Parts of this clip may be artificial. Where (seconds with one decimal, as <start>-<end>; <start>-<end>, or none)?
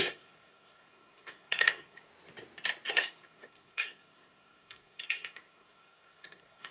0.0-2.1; 2.9-6.7